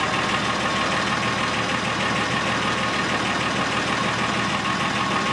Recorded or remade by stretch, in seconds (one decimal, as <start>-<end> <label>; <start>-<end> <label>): 0.0-5.3 recorded